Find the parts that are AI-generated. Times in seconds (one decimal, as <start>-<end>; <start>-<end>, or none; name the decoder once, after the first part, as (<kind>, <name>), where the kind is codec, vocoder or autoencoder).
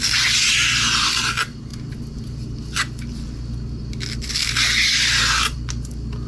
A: none